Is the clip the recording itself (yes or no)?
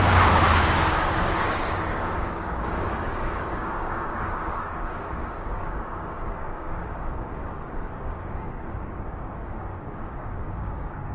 no